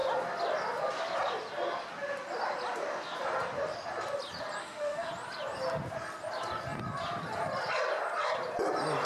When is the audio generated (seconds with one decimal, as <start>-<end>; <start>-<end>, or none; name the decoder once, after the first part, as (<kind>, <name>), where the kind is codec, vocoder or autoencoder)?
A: 4.6-5.1 (autoencoder, DAC-VAE)